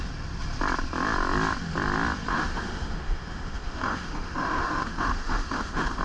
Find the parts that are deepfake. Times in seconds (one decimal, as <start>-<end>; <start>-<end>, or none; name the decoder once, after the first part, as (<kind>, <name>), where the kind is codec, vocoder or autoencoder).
2.3-6.0 (autoencoder, DAC-VAE)